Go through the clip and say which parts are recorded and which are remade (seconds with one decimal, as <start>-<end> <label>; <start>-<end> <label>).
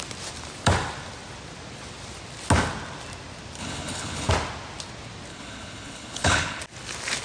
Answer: 0.0-3.6 recorded; 3.6-4.3 remade; 4.3-5.3 recorded; 5.3-6.6 remade; 6.6-7.2 recorded